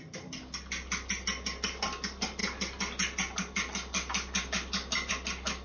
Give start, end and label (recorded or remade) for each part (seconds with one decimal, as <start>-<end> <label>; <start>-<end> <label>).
0.0-5.6 recorded